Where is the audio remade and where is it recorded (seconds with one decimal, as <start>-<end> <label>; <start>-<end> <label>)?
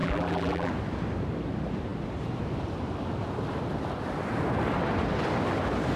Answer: 0.0-0.7 remade; 0.7-6.0 recorded